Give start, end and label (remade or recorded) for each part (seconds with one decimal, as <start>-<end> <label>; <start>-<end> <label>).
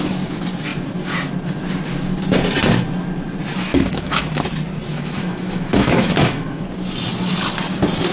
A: 0.0-3.7 recorded; 3.7-4.3 remade; 4.3-4.9 recorded; 4.9-6.6 remade; 6.6-8.1 recorded